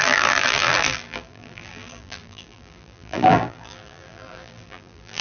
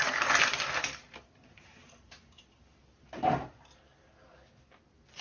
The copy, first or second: first